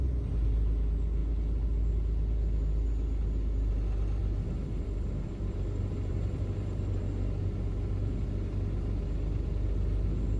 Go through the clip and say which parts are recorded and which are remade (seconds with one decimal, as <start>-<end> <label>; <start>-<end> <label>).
0.0-4.2 recorded; 4.2-7.0 remade; 7.0-10.4 recorded

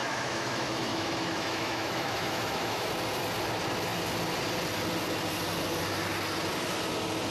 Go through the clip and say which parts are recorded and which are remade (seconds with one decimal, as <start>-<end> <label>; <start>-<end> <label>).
0.0-2.9 remade; 2.9-7.3 recorded

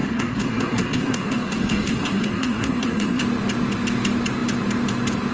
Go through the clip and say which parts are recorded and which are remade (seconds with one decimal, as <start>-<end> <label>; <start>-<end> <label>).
0.0-3.2 remade; 3.2-5.3 recorded

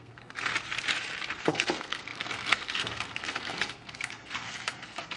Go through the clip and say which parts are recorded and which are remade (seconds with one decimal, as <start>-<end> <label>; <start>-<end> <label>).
0.0-0.5 remade; 0.5-1.4 recorded; 1.4-5.2 remade

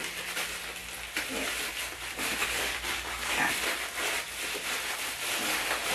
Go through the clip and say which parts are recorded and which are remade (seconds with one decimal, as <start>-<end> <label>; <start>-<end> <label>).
0.0-2.4 recorded; 2.4-3.5 remade; 3.5-5.9 recorded

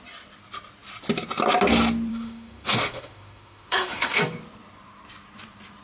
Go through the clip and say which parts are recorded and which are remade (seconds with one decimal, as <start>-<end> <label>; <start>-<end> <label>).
0.0-2.1 recorded; 2.1-4.2 remade; 4.2-5.8 recorded

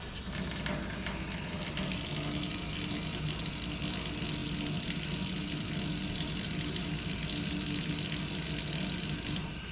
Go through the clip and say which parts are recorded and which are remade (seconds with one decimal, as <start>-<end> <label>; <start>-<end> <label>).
0.0-9.7 recorded

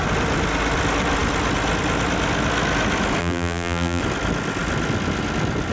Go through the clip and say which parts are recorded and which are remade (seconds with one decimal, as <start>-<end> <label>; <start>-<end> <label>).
0.0-3.2 recorded; 3.2-4.0 remade; 4.0-5.7 recorded